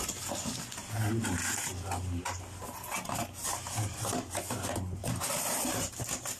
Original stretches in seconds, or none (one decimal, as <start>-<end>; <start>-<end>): 0.0-6.4